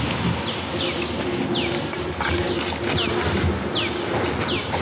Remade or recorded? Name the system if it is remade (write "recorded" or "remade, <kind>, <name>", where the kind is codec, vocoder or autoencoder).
recorded